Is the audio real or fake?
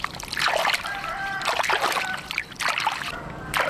fake